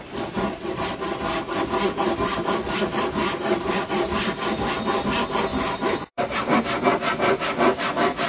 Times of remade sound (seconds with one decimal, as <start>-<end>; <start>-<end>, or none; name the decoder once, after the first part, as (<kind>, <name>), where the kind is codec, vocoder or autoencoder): 2.8-3.9 (vocoder, BigVGAN v2); 5.5-6.6